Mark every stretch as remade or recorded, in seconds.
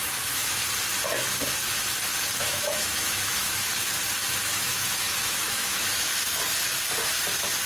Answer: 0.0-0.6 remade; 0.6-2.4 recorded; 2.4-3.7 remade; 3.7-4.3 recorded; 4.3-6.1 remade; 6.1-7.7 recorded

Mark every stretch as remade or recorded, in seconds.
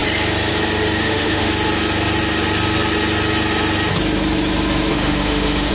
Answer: 0.0-1.0 recorded; 1.0-1.5 remade; 1.5-4.9 recorded; 4.9-5.7 remade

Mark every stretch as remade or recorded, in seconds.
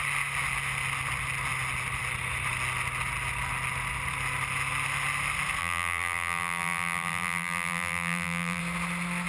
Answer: 0.0-5.6 recorded; 5.6-8.6 remade; 8.6-9.3 recorded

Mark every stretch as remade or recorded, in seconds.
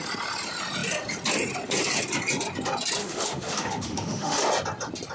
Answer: 0.0-3.0 recorded; 3.0-4.4 remade; 4.4-5.1 recorded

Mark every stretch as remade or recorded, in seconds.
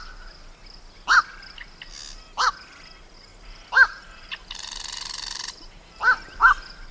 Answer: 0.0-3.3 recorded; 3.3-6.0 remade; 6.0-6.9 recorded